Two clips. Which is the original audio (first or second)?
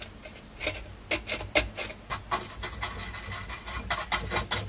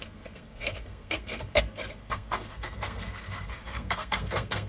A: first